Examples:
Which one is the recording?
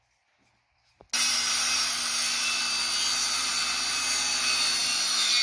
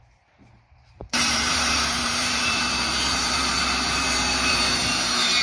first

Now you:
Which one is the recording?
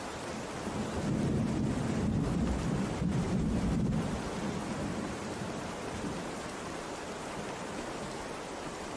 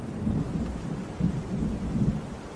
second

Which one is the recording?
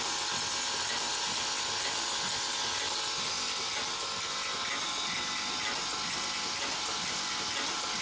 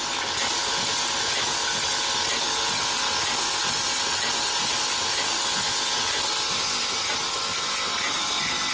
first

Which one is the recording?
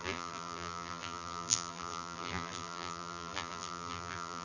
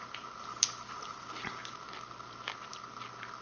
second